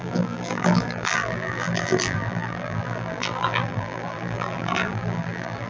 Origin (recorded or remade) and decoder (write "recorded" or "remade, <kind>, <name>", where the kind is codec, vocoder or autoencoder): remade, vocoder, BigVGAN v2